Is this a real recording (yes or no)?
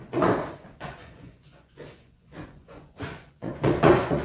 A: no